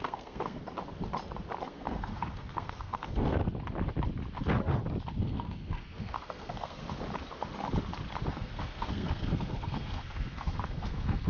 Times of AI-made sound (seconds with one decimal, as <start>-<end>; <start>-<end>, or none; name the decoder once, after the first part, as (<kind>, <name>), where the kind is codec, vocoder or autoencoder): 0.0-0.6 (codec, SNAC); 1.7-3.4; 5.2-6.8; 8.3-11.3